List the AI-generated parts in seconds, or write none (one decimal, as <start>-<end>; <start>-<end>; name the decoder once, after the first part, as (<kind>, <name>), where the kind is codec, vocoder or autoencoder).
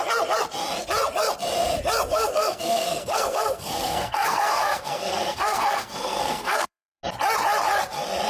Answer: 2.1-7.0 (codec, SNAC)